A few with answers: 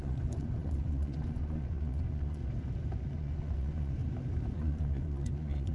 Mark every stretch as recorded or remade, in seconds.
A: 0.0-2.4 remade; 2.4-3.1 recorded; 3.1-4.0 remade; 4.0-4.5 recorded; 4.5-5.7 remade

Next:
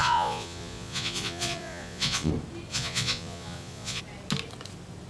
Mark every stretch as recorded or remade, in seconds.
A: 0.0-2.3 remade; 2.3-2.7 recorded; 2.7-4.0 remade; 4.0-5.1 recorded

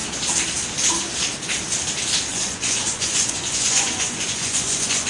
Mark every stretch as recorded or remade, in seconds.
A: 0.0-2.3 recorded; 2.3-5.1 remade

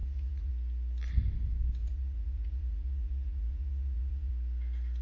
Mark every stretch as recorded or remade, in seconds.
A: 0.0-0.5 remade; 0.5-1.8 recorded; 1.8-4.3 remade; 4.3-5.0 recorded

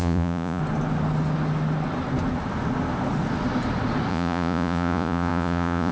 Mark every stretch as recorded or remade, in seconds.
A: 0.0-0.6 remade; 0.6-4.1 recorded; 4.1-5.9 remade

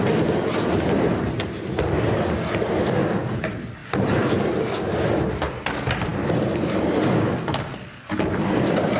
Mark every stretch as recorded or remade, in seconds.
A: 0.0-9.0 recorded